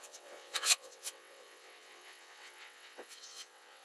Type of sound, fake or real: fake